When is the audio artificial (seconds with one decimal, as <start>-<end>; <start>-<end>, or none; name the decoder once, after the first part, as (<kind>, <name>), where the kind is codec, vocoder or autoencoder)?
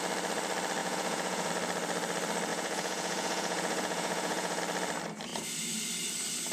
0.8-1.5 (vocoder, Vocos); 2.5-4.6